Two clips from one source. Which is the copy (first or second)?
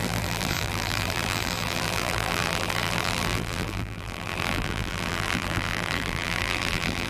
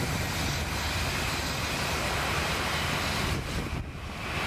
first